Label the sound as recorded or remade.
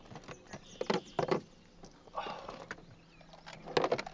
recorded